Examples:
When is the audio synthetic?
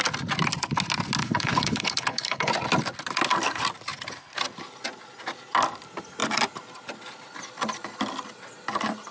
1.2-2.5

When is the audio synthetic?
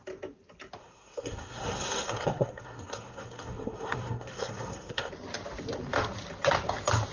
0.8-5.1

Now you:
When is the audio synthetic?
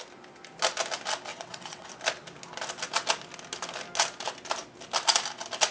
1.3-1.9